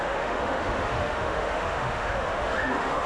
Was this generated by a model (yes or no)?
yes